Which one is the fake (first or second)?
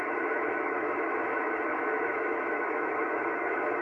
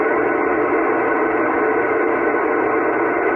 first